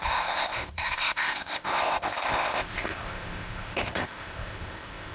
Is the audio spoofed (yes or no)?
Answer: yes